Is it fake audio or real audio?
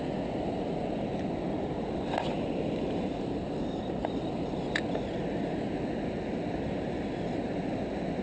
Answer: real